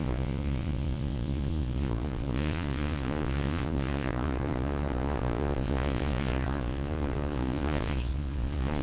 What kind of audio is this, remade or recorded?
remade